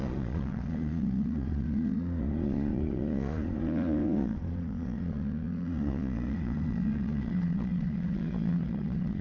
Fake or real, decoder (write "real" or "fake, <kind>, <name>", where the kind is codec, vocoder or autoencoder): fake, vocoder, Vocos